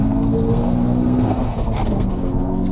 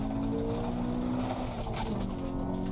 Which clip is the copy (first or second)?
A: first